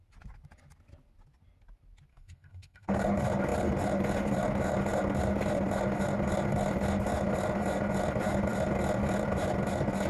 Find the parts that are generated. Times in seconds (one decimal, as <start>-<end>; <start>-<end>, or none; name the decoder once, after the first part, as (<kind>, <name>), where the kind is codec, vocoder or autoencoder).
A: 2.1-3.1 (codec, SNAC)